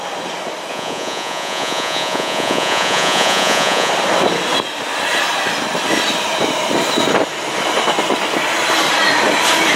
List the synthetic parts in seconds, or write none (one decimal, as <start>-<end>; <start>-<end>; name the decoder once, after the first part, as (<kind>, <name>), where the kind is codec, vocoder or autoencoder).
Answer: 0.7-3.9 (vocoder, Vocos)